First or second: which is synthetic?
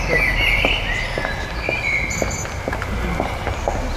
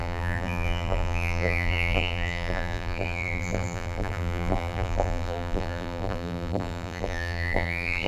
second